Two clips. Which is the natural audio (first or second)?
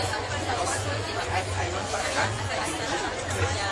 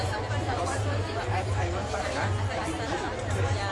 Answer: second